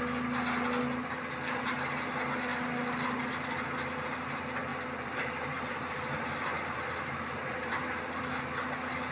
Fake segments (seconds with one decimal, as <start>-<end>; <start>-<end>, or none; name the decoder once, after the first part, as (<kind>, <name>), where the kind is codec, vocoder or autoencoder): 4.7-8.4 (vocoder, BigVGAN v2)